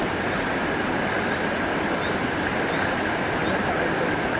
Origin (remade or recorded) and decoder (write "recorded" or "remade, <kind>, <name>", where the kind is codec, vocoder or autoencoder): recorded